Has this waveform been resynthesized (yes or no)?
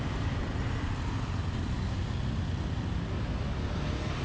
no